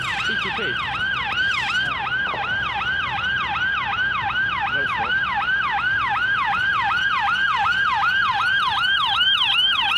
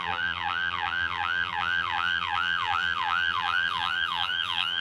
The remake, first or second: second